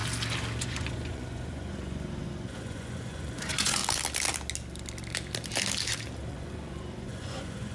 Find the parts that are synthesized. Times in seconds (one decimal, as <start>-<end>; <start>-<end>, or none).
0.6-3.8; 6.3-7.7